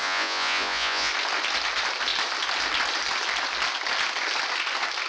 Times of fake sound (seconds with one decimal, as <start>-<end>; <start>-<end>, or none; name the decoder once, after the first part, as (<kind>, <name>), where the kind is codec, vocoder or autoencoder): 0.0-1.1 (vocoder, Vocos)